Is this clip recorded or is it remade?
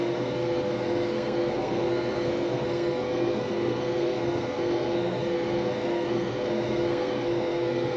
remade